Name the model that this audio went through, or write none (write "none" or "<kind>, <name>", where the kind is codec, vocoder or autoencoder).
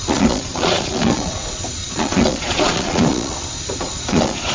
vocoder, Vocos